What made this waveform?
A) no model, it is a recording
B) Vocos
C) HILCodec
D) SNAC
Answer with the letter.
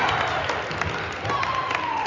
A